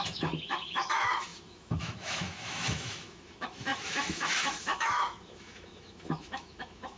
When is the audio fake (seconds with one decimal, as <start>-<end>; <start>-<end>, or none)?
0.0-7.0